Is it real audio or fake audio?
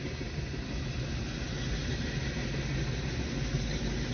real